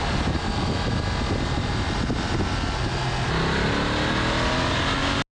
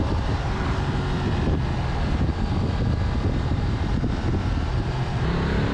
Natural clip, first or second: first